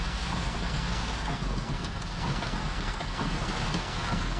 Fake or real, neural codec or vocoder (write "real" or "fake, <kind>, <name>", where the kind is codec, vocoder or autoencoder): fake, codec, SNAC